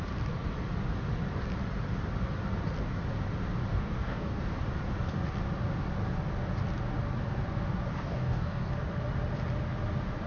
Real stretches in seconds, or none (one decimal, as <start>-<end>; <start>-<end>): 0.0-3.7; 4.4-7.9; 8.7-10.3